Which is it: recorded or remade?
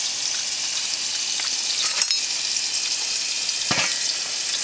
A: recorded